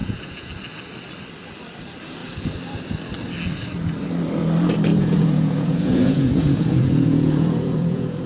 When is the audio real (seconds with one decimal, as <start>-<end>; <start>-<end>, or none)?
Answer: 0.5-4.9